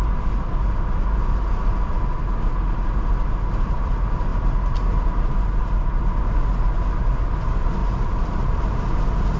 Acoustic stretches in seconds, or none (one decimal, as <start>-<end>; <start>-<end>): 0.0-7.8; 8.6-9.4